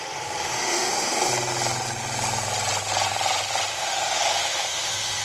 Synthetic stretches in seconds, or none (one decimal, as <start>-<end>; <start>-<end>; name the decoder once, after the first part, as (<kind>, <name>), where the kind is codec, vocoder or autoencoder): 0.0-1.3 (autoencoder, DAC-VAE); 3.7-5.2